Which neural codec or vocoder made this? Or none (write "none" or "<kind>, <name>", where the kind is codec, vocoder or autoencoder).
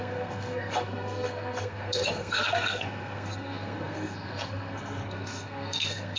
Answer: codec, SNAC